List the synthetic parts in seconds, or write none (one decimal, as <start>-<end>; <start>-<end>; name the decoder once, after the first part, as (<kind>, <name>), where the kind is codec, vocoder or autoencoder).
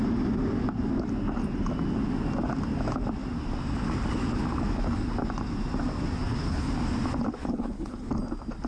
6.2-6.7 (codec, HILCodec); 7.4-8.1